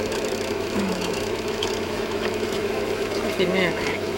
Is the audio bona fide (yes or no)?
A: no